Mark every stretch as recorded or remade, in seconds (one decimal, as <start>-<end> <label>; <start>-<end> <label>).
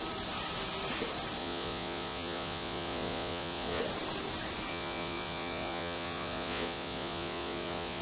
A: 0.0-1.4 recorded; 1.4-3.8 remade; 3.8-4.7 recorded; 4.7-8.0 remade